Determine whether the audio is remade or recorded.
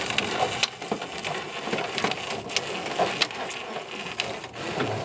recorded